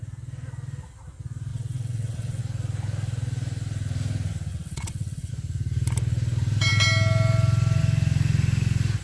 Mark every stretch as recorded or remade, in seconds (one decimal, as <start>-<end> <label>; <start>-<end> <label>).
0.0-1.5 recorded; 1.5-2.4 remade; 2.4-4.5 recorded; 4.5-5.3 remade; 5.3-9.0 recorded